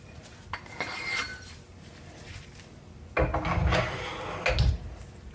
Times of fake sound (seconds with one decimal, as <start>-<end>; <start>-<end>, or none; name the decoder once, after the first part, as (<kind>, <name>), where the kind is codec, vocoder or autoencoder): none